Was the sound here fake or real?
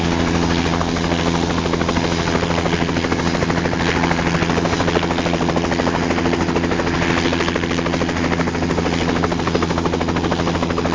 real